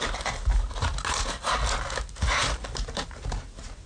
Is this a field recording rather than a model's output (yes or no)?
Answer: yes